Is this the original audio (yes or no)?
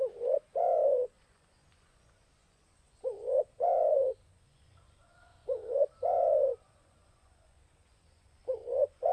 no